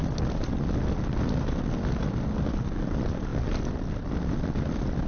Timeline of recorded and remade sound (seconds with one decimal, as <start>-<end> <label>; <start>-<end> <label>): 0.0-5.1 recorded